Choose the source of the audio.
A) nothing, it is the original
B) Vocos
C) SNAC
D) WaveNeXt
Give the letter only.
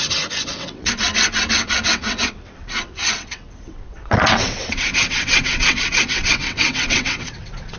D